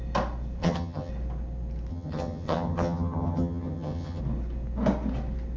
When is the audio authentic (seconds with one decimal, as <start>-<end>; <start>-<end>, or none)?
0.0-0.6; 1.1-1.9; 4.2-5.6